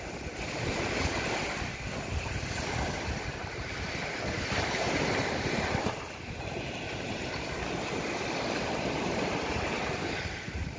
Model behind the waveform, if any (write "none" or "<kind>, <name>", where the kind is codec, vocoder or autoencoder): none